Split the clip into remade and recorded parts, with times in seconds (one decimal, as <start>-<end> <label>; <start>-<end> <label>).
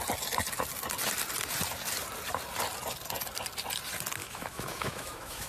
0.0-4.2 recorded; 4.2-5.5 remade